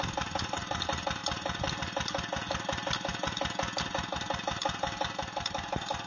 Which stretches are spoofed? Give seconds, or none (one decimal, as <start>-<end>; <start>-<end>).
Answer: none

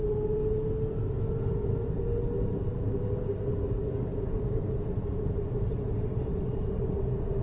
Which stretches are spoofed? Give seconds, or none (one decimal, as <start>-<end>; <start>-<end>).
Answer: 2.7-4.8

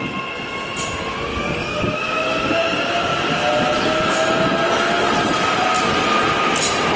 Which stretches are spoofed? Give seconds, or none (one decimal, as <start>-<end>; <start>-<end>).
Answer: 1.3-2.5

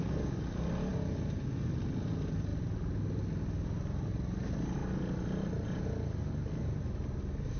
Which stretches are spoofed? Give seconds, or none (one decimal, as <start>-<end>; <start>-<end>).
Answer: none

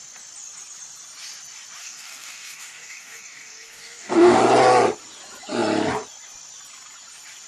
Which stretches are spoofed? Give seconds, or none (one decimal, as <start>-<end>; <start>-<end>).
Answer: 1.8-4.4